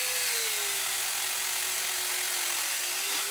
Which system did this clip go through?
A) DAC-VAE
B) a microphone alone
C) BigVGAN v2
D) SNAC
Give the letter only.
B